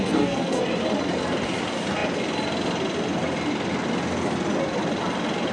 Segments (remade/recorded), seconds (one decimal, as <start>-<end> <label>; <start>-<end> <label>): 0.0-0.6 remade; 0.6-5.5 recorded

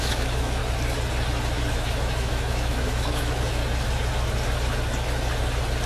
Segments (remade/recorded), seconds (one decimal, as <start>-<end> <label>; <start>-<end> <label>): 0.0-0.6 remade; 0.6-1.7 recorded; 1.7-3.6 remade; 3.6-5.9 recorded

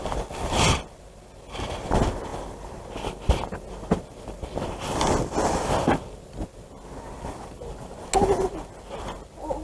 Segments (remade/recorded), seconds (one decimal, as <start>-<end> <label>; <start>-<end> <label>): 0.0-9.6 recorded